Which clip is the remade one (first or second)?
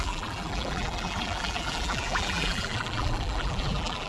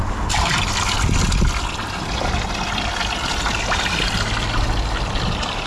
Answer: first